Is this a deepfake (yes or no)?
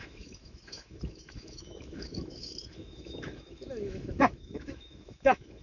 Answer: yes